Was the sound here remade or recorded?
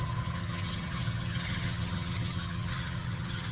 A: remade